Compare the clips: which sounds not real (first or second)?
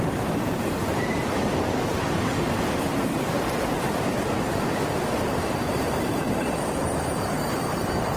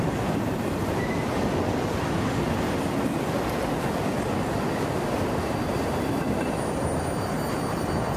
first